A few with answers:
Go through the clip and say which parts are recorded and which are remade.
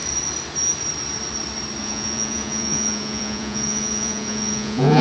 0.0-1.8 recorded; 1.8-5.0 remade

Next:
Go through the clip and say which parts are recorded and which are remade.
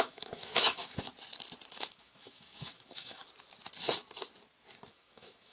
0.0-1.1 remade; 1.1-1.7 recorded; 1.7-3.2 remade; 3.2-4.9 recorded; 4.9-5.5 remade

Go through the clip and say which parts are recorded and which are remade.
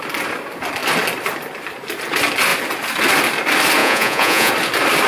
0.0-3.8 recorded; 3.8-4.5 remade; 4.5-5.1 recorded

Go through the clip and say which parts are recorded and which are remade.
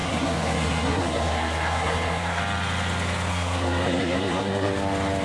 0.0-2.4 remade; 2.4-3.3 recorded; 3.3-4.7 remade; 4.7-5.2 recorded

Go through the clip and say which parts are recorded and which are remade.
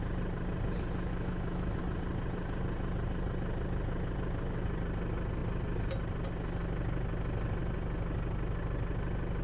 0.0-1.1 recorded; 1.1-1.8 remade; 1.8-9.4 recorded